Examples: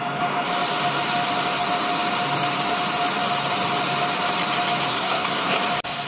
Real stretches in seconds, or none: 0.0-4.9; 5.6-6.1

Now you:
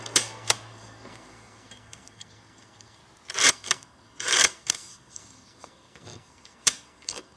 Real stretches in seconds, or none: 3.0-3.5

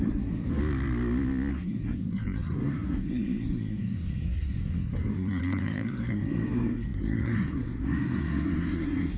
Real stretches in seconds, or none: 0.6-1.5

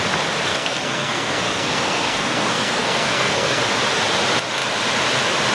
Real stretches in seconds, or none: 0.0-0.5; 3.6-5.5

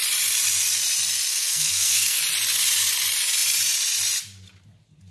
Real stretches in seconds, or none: 0.0-1.3; 2.2-5.1

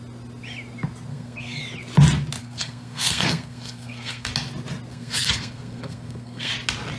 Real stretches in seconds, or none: 0.0-1.1; 1.6-2.4; 4.3-4.9; 6.5-7.0